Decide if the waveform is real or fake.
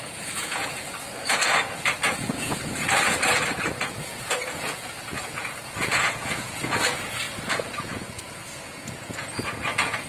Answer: fake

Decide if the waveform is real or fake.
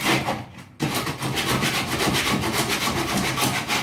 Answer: real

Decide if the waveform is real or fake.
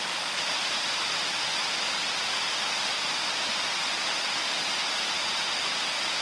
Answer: real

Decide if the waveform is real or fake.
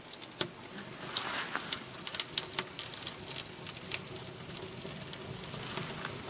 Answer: real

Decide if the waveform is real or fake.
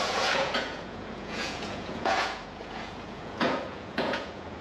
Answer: fake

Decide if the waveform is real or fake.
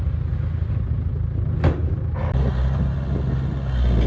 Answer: real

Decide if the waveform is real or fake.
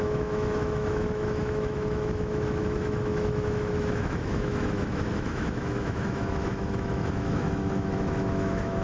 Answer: fake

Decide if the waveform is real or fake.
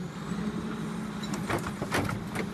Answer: real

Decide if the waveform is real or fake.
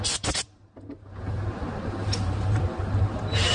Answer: real